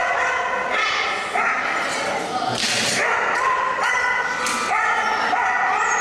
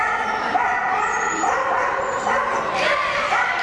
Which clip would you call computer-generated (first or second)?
second